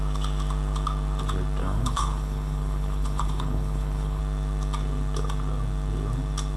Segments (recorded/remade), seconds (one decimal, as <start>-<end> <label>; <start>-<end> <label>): 0.0-1.6 recorded; 1.6-4.2 remade; 4.2-6.6 recorded